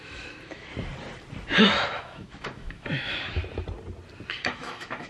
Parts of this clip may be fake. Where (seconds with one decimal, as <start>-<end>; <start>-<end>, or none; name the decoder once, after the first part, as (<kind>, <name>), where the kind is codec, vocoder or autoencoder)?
0.0-0.7 (autoencoder, DAC-VAE); 1.6-3.4; 4.3-5.1